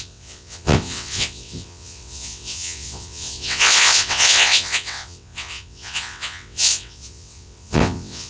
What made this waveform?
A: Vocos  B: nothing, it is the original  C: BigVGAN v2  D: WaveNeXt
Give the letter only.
D